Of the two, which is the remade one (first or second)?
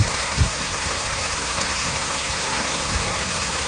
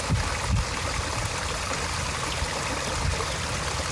first